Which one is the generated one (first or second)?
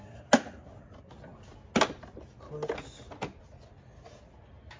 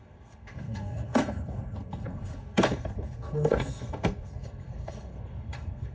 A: second